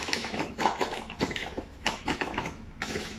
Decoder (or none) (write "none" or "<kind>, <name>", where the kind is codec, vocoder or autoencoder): autoencoder, DAC-VAE